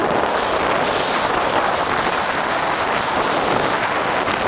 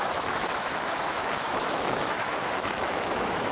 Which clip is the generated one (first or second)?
second